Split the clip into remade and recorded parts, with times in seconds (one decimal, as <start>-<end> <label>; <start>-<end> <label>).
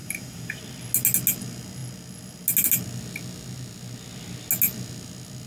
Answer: 0.0-0.6 remade; 0.6-5.5 recorded